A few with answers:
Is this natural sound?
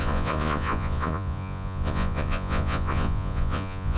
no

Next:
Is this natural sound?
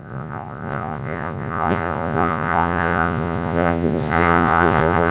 no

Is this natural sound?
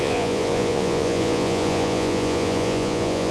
no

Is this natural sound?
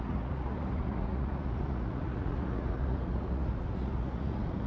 no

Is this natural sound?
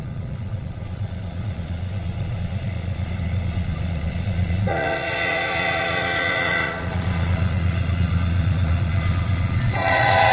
no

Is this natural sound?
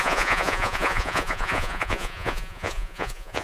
no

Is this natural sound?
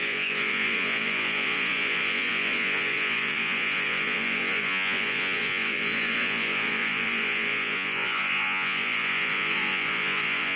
no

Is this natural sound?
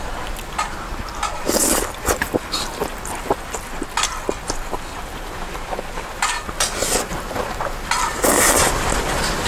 yes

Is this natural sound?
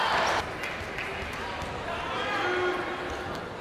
yes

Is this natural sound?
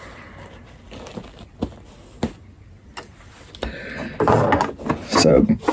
yes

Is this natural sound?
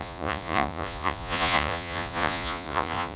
no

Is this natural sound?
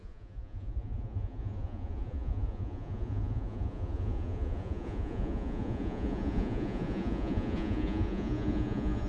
no